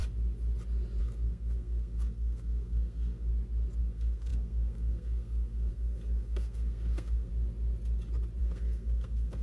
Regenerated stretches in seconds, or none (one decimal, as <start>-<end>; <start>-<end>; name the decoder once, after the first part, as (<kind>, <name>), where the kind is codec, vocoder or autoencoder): 1.0-3.3 (codec, SNAC); 3.8-7.3; 8.4-9.4